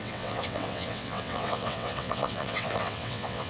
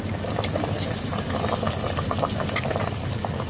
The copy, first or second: first